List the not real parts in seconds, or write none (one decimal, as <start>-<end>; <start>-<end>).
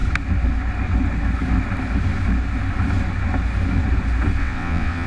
4.4-5.1